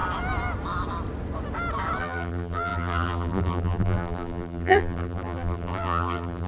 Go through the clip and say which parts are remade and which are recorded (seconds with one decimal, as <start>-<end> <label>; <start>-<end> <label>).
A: 0.0-2.0 recorded; 2.0-6.5 remade